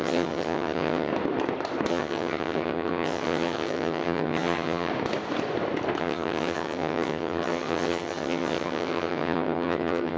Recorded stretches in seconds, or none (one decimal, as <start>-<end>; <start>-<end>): 1.1-1.9; 4.9-6.0